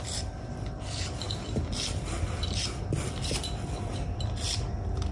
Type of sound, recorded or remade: recorded